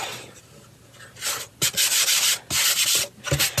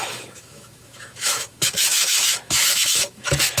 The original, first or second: first